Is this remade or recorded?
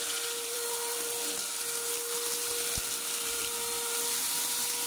remade